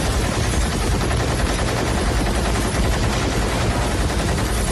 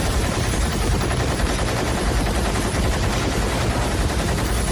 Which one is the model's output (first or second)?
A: second